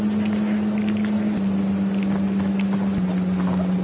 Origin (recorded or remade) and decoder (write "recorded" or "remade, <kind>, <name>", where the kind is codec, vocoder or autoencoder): recorded